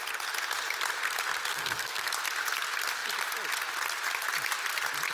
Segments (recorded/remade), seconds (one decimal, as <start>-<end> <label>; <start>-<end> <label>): 0.0-1.5 recorded; 1.5-2.1 remade; 2.1-5.1 recorded